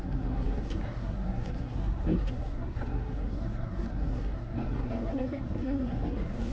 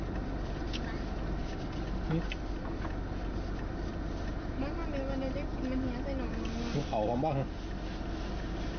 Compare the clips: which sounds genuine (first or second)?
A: second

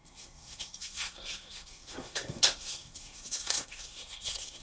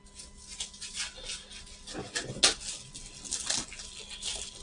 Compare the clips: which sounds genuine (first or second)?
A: second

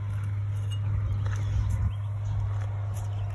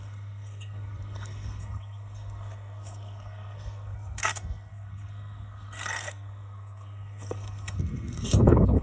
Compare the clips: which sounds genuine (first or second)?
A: first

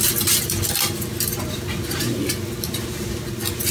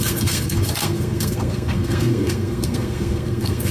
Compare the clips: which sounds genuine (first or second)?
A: first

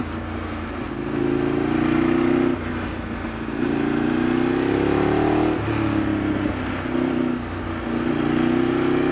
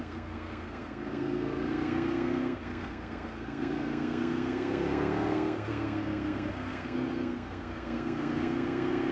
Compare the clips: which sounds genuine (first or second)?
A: first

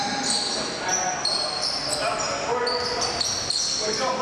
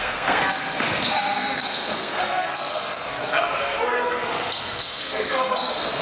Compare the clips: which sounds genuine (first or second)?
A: first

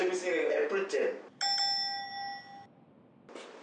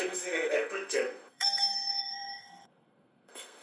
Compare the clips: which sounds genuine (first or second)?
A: first